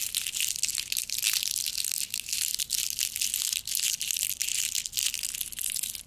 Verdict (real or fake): real